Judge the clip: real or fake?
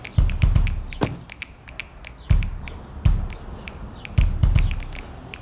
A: real